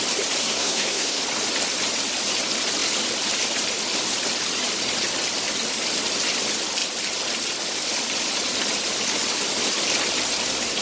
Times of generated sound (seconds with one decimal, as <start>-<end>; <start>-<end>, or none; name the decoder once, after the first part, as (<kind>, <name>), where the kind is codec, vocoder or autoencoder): 0.4-1.2 (codec, SNAC)